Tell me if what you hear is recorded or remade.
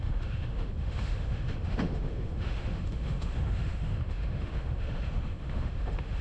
remade